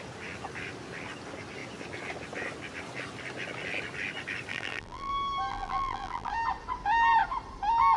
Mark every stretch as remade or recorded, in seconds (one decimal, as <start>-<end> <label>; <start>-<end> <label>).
0.0-4.5 recorded; 4.5-5.1 remade; 5.1-5.5 recorded; 5.5-6.3 remade; 6.3-8.0 recorded